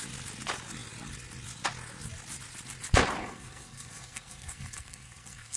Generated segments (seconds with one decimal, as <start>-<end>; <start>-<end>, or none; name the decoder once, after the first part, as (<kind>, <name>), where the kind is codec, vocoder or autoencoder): 3.2-5.6 (codec, SNAC)